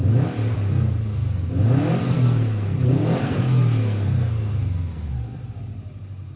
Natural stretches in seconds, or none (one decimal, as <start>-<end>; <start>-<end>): 0.0-0.5; 1.5-2.0; 5.1-6.4